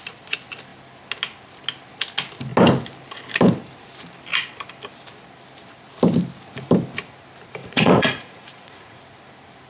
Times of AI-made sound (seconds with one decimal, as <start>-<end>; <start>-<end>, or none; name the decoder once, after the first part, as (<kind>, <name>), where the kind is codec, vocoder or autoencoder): 7.6-9.0 (vocoder, Vocos)